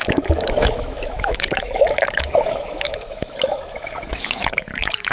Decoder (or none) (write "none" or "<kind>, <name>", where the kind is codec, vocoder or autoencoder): autoencoder, DAC-VAE